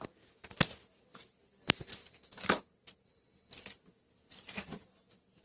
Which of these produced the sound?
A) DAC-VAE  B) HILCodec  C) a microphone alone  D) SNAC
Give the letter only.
C